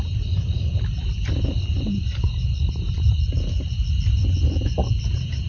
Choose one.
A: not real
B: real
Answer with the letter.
B